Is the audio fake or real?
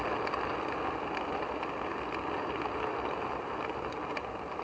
real